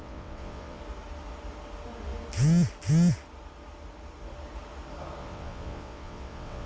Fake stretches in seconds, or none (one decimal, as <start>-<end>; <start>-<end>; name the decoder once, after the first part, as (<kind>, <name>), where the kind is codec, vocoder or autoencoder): 0.0-0.8 (vocoder, WaveNeXt); 5.2-6.7